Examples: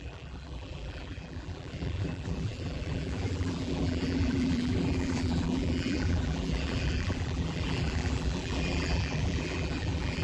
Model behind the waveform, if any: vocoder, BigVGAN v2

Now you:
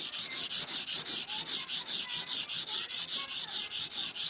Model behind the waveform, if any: none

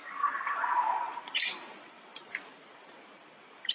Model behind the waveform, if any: vocoder, BigVGAN v2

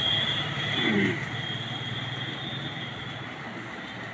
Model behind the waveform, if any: none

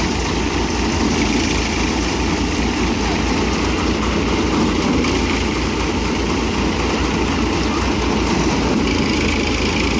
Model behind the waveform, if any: none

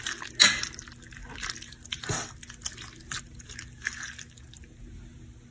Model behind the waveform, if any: none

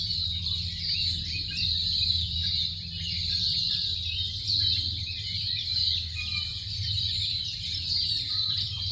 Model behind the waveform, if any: vocoder, BigVGAN v2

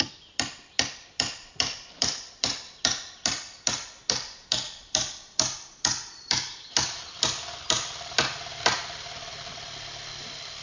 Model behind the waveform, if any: vocoder, BigVGAN v2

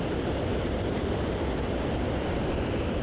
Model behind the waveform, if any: vocoder, BigVGAN v2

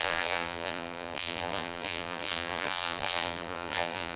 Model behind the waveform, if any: vocoder, BigVGAN v2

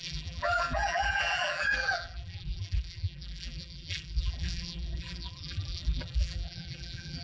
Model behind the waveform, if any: vocoder, BigVGAN v2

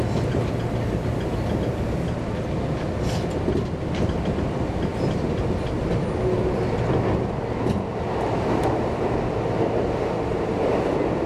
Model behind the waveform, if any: none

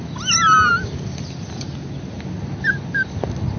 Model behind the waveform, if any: none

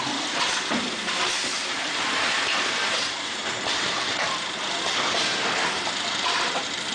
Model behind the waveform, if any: vocoder, BigVGAN v2